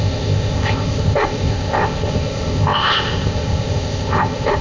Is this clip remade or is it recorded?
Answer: remade